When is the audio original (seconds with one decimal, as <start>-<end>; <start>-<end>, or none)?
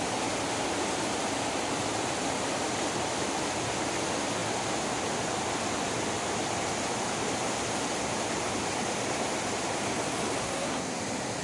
0.0-10.4; 11.0-11.4